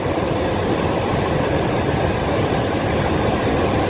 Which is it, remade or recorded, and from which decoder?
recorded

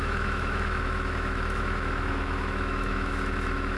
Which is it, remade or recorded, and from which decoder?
remade, autoencoder, DAC-VAE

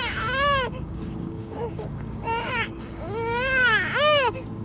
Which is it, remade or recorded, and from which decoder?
remade, codec, DAC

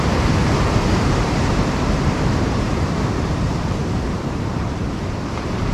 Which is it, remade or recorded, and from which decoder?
remade, vocoder, BigVGAN v2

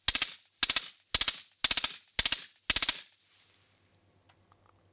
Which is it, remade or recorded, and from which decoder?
recorded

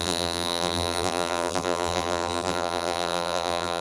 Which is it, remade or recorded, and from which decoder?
remade, vocoder, BigVGAN v2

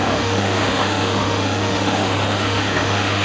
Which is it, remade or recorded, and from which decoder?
remade, autoencoder, DAC-VAE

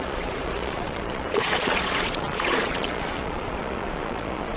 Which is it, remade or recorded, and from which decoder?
remade, vocoder, Vocos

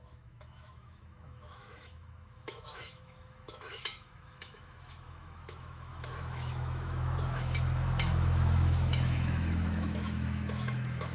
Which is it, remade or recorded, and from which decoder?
remade, autoencoder, DAC-VAE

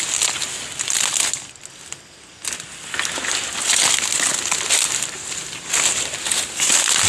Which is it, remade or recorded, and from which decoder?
recorded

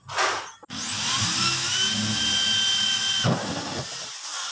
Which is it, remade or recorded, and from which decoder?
recorded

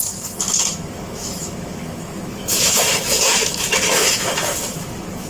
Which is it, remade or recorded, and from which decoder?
remade, autoencoder, DAC-VAE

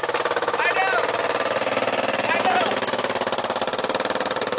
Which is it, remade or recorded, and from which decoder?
recorded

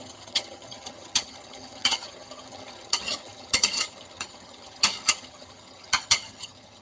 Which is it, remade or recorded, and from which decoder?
remade, vocoder, HiFi-GAN